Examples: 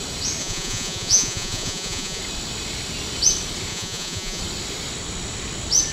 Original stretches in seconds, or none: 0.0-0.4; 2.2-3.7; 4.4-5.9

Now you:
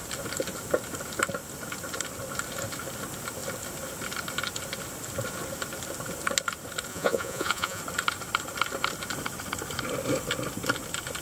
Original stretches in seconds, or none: 0.0-6.9; 7.8-11.2

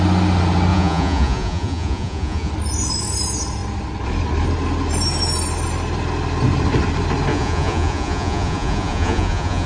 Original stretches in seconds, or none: 0.0-0.7; 2.5-7.3

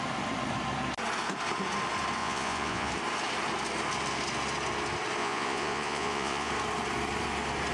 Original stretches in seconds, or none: 0.0-2.2; 2.9-5.2; 6.5-7.7

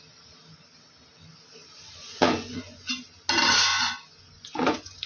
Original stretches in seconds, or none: 0.0-2.0; 2.9-3.7

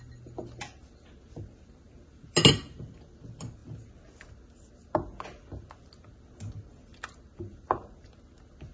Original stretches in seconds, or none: 0.0-8.7

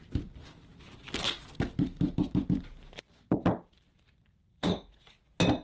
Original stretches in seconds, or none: 0.0-4.5; 5.1-5.6

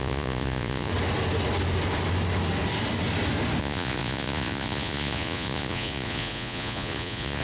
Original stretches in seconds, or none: 0.9-3.6